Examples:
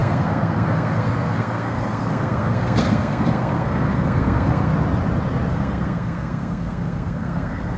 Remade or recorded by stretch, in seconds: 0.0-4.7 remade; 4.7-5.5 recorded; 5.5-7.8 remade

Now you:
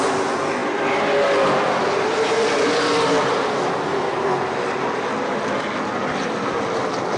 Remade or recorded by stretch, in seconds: 0.0-7.2 recorded

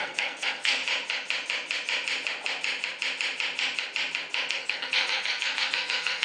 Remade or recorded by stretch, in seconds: 0.0-0.8 remade; 0.8-4.5 recorded; 4.5-6.2 remade